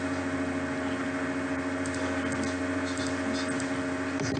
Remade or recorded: recorded